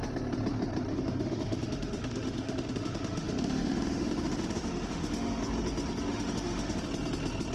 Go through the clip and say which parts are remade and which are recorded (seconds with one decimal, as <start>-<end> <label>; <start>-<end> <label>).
0.0-0.9 recorded; 0.9-5.4 remade; 5.4-6.1 recorded; 6.1-6.8 remade; 6.8-7.5 recorded